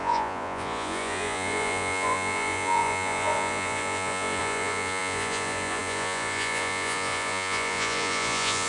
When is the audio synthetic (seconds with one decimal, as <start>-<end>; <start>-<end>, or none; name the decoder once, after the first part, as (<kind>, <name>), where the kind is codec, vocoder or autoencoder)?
0.0-8.7 (vocoder, Vocos)